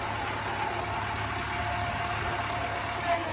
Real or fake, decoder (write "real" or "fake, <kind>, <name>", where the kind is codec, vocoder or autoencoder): real